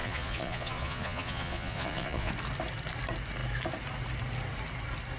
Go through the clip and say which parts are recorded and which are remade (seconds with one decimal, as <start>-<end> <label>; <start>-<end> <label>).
0.0-2.3 remade; 2.3-5.2 recorded